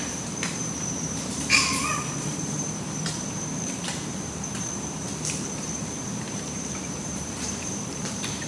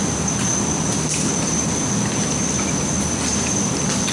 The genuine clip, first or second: second